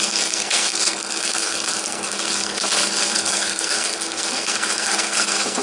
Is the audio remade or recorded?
remade